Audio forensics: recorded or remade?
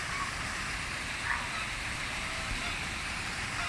recorded